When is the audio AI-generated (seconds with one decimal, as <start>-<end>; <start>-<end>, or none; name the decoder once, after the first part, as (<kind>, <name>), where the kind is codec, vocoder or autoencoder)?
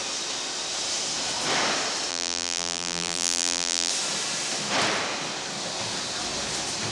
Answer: 2.1-3.9 (vocoder, BigVGAN v2)